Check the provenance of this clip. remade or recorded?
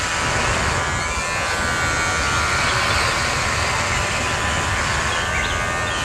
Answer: recorded